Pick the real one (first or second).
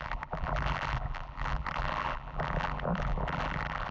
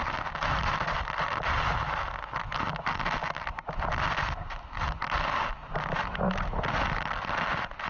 second